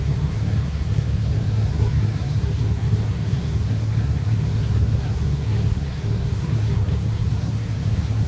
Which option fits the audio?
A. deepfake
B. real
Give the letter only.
A